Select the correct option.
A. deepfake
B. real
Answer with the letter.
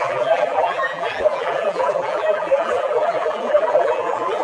A